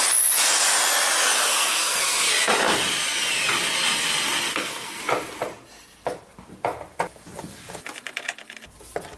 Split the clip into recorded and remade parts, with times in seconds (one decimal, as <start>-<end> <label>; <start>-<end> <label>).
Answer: 0.0-1.5 recorded; 1.5-2.3 remade; 2.3-4.5 recorded; 4.5-5.0 remade; 5.0-9.2 recorded